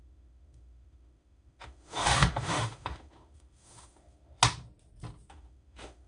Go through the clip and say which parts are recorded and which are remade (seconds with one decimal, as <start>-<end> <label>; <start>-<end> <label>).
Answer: 0.0-4.4 remade; 4.4-5.3 recorded; 5.3-6.1 remade